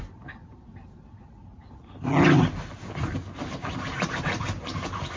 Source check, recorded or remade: recorded